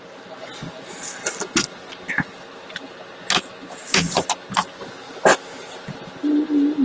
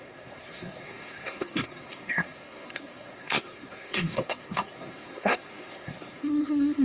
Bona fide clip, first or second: first